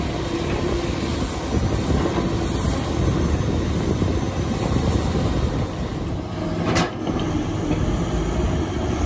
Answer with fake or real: real